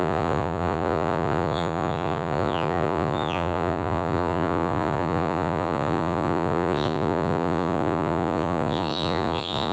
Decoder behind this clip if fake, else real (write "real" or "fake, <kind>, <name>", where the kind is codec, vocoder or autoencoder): fake, vocoder, Vocos